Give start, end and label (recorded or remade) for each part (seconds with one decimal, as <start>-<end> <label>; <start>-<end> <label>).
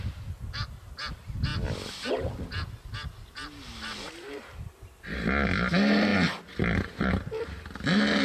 0.0-8.2 recorded